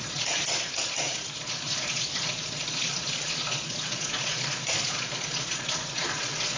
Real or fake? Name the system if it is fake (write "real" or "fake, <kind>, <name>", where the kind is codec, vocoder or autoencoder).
fake, vocoder, Vocos